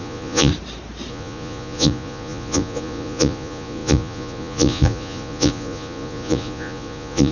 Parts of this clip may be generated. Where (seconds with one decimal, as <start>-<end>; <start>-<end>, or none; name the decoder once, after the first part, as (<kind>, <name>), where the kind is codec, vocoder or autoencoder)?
0.0-0.5 (vocoder, Vocos); 1.1-7.3